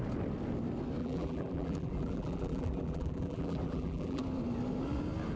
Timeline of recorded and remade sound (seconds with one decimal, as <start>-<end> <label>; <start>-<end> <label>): 0.0-1.0 recorded; 1.0-4.2 remade; 4.2-5.4 recorded